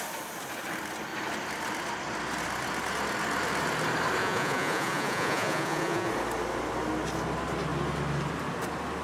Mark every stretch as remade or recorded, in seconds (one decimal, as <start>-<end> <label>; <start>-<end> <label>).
0.0-4.2 recorded; 4.2-6.1 remade; 6.1-9.0 recorded